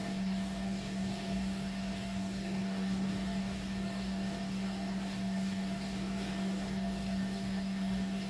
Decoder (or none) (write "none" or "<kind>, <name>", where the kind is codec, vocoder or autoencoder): codec, DAC